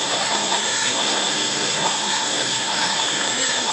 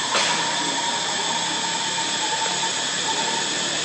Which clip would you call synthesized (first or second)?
first